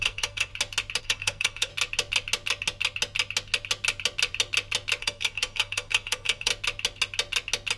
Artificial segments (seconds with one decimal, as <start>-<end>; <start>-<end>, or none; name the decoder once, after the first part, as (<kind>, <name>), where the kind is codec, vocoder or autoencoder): 0.0-0.5 (codec, SNAC); 1.0-1.7; 5.0-6.5

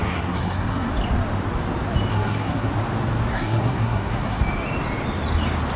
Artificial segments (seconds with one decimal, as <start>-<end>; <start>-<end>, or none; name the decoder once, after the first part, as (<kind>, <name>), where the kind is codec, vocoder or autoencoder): 0.0-0.9 (codec, SNAC); 2.1-2.7; 3.3-4.4

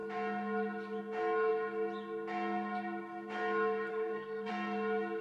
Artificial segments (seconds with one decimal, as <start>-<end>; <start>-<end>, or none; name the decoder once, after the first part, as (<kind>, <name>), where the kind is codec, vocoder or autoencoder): 3.9-4.5 (codec, SNAC)